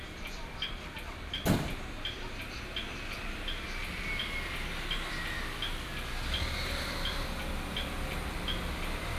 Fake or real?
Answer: real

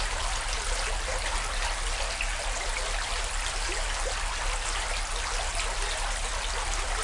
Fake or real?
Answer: real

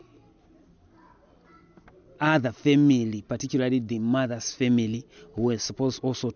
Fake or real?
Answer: real